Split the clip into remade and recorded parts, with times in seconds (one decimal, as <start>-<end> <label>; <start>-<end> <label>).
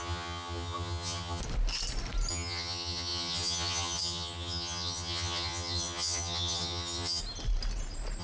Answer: 0.0-1.4 remade; 1.4-2.3 recorded; 2.3-7.2 remade; 7.2-8.2 recorded